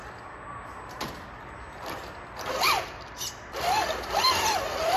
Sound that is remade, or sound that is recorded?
recorded